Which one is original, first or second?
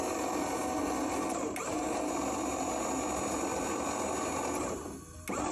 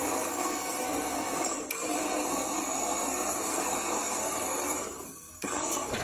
first